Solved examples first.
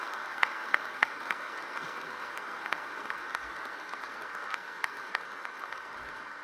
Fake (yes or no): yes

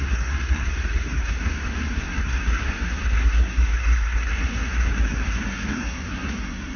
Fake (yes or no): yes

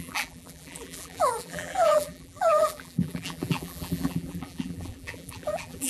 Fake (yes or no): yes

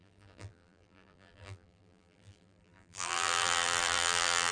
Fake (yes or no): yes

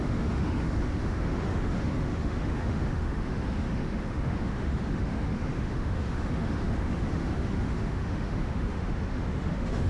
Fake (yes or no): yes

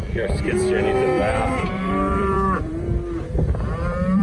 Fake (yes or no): yes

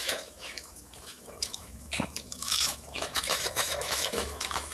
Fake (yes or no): yes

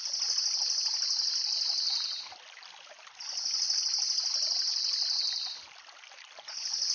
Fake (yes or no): no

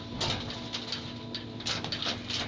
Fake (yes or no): no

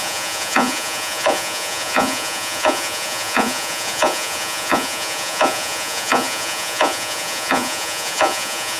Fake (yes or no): yes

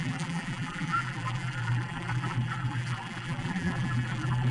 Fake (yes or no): yes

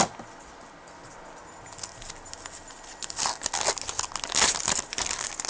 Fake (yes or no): no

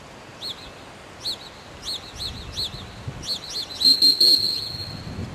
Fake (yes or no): no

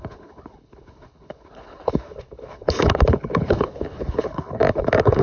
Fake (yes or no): yes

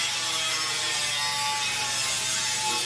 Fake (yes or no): no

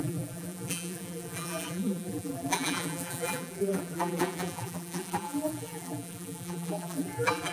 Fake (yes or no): yes